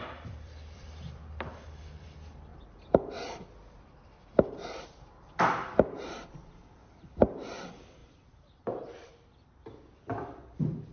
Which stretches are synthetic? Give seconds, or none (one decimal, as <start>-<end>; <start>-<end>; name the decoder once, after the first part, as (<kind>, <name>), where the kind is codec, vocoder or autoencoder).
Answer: 0.0-10.9 (vocoder, BigVGAN v2)